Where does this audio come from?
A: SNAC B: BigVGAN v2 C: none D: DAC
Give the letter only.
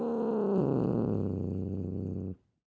C